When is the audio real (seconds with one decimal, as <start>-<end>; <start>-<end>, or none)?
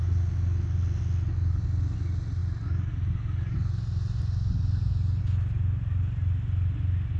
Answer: 0.0-7.2